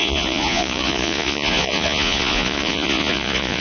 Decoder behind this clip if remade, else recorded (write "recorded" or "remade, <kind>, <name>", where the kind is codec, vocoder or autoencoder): remade, vocoder, Vocos